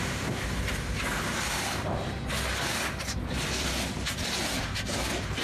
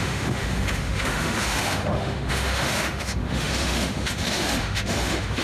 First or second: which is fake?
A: second